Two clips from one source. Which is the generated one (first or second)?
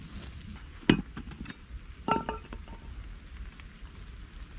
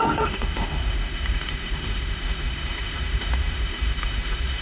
second